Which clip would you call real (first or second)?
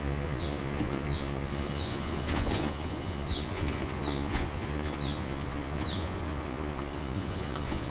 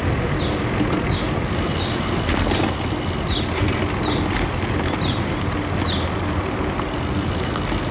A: second